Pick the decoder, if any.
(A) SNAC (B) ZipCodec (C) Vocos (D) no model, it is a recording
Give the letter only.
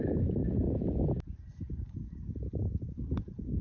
D